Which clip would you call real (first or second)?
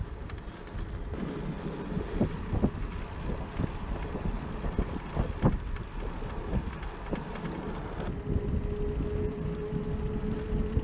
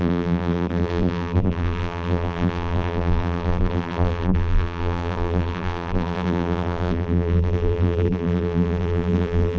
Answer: first